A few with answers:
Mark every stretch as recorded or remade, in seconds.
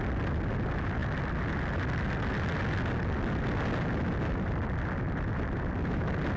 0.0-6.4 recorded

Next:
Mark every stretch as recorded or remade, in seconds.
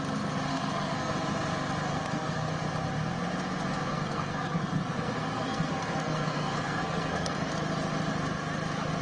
0.0-0.5 recorded; 0.5-1.1 remade; 1.1-1.9 recorded; 1.9-2.5 remade; 2.5-3.9 recorded; 3.9-7.5 remade; 7.5-9.0 recorded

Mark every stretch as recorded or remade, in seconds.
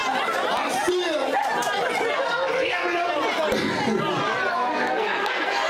0.0-2.2 recorded; 2.2-2.8 remade; 2.8-4.5 recorded; 4.5-5.7 remade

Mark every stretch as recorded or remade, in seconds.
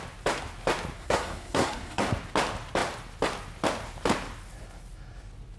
0.0-1.0 recorded; 1.0-2.0 remade; 2.0-5.6 recorded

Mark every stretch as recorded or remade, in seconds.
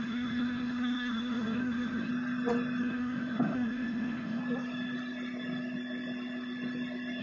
0.0-2.1 remade; 2.1-2.8 recorded; 2.8-4.4 remade; 4.4-7.2 recorded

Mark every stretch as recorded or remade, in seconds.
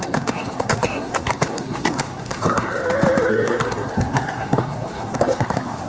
0.0-2.8 remade; 2.8-3.3 recorded; 3.3-5.9 remade